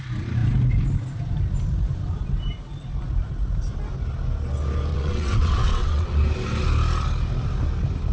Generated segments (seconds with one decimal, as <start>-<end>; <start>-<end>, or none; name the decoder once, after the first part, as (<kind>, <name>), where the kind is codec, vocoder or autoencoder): 4.9-6.2 (vocoder, WaveNeXt)